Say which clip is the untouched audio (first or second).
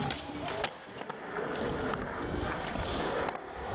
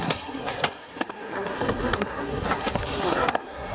first